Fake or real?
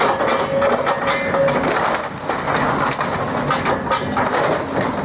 real